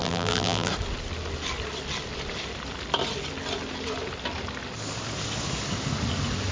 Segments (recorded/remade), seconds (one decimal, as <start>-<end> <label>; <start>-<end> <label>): 0.0-0.7 remade; 0.7-6.5 recorded